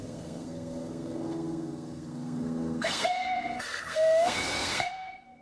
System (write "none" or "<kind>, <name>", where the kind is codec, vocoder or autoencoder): codec, SNAC